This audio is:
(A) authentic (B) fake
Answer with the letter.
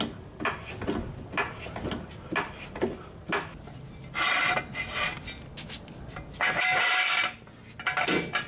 A